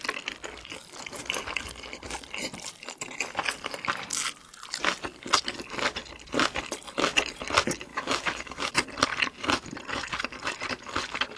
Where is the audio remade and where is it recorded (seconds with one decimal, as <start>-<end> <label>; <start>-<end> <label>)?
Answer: 0.0-7.9 recorded; 7.9-8.7 remade; 8.7-11.4 recorded

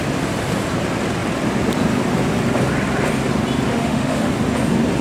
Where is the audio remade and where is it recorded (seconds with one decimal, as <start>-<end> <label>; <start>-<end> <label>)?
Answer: 0.0-3.7 recorded; 3.7-4.3 remade; 4.3-5.0 recorded